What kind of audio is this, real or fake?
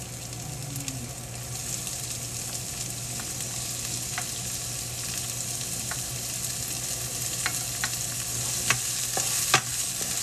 real